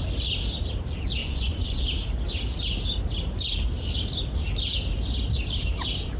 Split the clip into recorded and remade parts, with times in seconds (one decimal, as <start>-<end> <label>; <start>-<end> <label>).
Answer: 0.0-1.2 recorded; 1.2-1.8 remade; 1.8-6.2 recorded